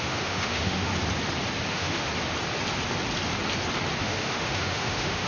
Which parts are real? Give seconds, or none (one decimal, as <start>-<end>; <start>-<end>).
0.9-1.7; 2.1-4.0